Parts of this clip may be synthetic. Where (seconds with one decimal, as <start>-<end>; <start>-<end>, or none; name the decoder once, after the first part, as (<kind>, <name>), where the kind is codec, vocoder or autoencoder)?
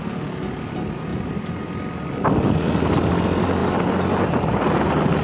none